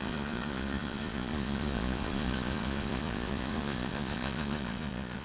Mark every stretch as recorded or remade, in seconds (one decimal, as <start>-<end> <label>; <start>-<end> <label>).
0.0-5.2 remade